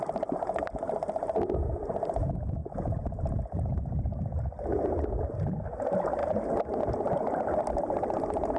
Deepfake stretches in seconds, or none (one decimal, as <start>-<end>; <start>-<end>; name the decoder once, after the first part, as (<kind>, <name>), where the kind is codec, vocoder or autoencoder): none